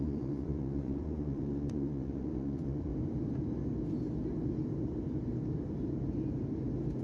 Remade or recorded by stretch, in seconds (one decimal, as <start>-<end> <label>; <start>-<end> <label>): 0.0-2.9 remade; 2.9-7.0 recorded